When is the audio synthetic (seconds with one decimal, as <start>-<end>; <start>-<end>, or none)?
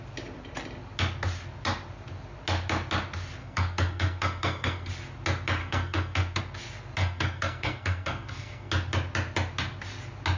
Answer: 3.4-4.9; 5.6-6.4; 7.0-8.7